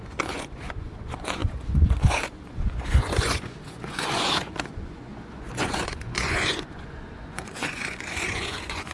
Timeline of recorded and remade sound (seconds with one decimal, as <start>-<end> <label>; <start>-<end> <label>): 0.0-8.9 remade